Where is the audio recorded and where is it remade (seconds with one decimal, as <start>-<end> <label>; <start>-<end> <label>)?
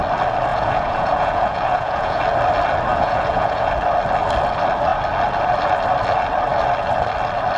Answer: 0.0-0.5 recorded; 0.5-2.2 remade; 2.2-2.9 recorded; 2.9-3.7 remade; 3.7-7.6 recorded